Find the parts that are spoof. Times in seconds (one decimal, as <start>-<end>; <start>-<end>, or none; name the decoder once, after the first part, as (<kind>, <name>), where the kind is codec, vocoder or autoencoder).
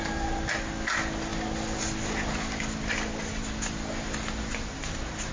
none